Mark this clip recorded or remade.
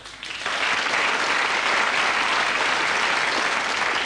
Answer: recorded